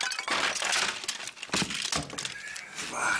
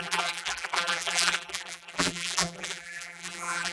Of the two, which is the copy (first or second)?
second